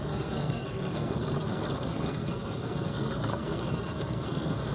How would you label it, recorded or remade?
remade